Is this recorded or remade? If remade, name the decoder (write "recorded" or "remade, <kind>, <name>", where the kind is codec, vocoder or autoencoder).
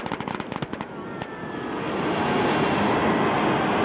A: recorded